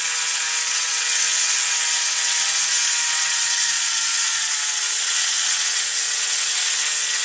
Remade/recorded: remade